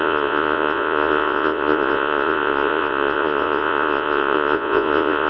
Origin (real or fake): fake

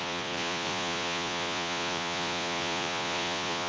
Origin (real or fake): fake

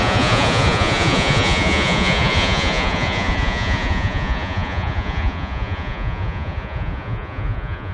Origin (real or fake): fake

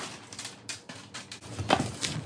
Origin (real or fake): real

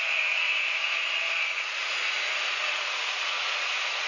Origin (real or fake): fake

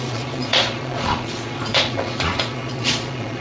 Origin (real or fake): fake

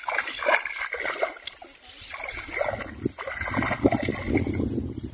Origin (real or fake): real